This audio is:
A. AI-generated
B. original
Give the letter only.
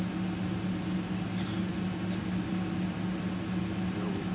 B